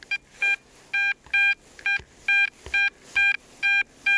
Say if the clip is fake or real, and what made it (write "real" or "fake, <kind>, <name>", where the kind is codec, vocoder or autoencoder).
real